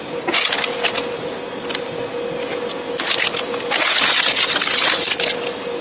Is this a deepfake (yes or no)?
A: no